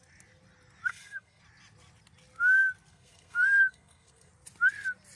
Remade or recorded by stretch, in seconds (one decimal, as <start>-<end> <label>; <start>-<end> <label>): 0.0-0.9 recorded; 0.9-1.4 remade; 1.4-2.9 recorded; 2.9-4.3 remade; 4.3-5.2 recorded